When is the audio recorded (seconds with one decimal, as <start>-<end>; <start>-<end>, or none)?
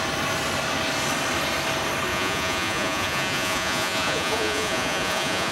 0.0-2.1